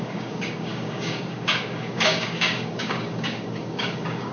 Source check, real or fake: fake